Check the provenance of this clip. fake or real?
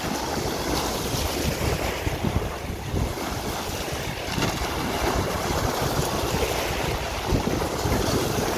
real